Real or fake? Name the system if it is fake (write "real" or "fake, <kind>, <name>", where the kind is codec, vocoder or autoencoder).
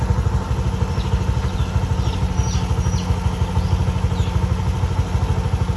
real